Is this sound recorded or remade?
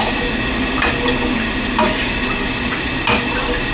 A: recorded